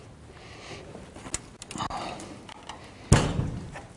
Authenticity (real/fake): real